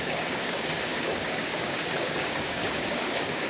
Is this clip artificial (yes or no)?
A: yes